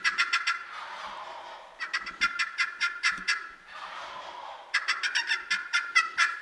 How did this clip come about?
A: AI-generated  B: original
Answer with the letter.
B